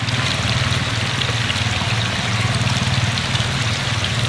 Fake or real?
real